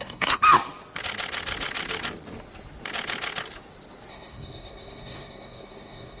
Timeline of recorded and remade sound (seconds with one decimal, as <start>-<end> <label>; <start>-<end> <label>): 0.0-0.4 remade; 0.4-4.1 recorded; 4.1-6.2 remade